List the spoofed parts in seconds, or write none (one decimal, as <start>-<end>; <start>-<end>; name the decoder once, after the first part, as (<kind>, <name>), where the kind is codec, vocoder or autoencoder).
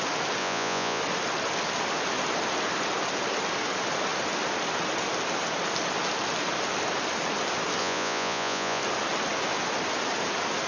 0.4-1.0 (vocoder, Vocos); 7.8-8.8